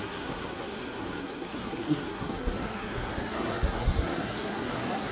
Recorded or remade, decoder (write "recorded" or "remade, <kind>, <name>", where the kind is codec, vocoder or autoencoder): remade, codec, SNAC